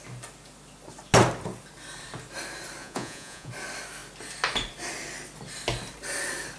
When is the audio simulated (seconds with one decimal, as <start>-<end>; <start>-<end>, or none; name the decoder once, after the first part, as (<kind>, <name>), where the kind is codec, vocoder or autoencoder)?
2.8-3.5 (vocoder, Vocos)